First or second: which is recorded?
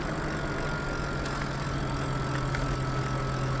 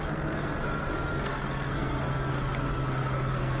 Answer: first